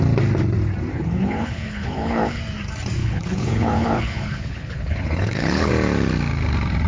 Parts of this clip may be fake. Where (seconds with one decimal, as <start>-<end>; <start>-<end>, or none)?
0.9-2.4; 3.0-5.7